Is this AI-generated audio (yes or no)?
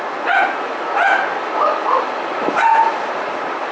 no